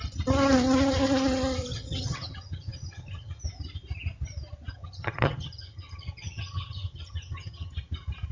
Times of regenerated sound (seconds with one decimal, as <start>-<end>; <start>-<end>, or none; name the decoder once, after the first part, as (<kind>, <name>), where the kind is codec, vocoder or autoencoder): 1.7-3.4 (vocoder, HiFi-GAN); 4.7-7.7